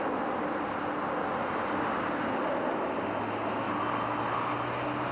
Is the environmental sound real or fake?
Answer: real